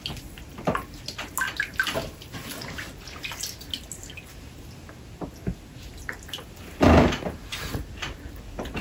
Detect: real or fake real